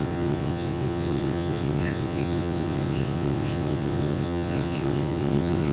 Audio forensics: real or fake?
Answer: fake